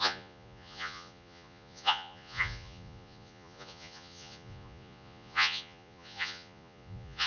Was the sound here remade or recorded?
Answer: remade